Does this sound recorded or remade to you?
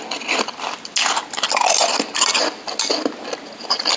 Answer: recorded